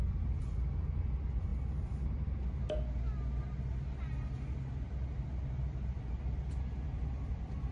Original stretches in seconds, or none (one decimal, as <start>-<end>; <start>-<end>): 0.0-7.7